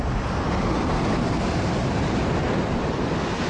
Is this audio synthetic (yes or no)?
no